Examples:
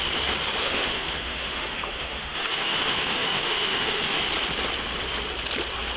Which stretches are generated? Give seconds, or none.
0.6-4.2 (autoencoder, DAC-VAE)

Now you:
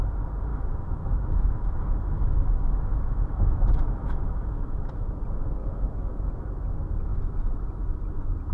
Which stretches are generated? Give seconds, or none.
0.5-5.1 (autoencoder, DAC-VAE); 5.6-6.3